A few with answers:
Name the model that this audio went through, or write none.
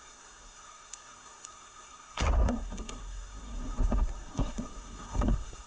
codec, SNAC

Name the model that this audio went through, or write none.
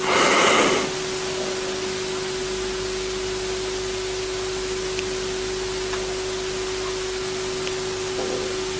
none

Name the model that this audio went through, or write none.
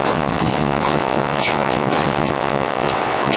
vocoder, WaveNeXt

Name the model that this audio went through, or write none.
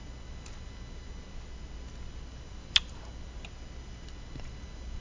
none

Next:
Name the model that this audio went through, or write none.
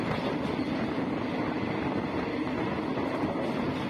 none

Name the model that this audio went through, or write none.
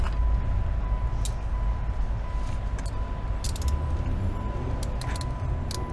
none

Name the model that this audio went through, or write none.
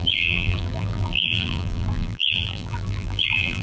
vocoder, BigVGAN v2